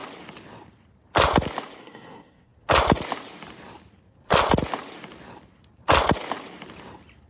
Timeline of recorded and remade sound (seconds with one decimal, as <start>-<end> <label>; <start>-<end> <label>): 0.0-1.8 recorded; 1.8-2.5 remade; 2.5-7.3 recorded